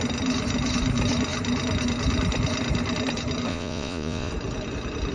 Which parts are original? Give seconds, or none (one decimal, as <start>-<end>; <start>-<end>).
0.0-3.5; 4.3-5.1